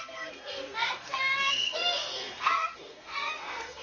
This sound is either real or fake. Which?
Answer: fake